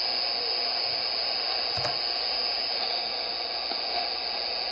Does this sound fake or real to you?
real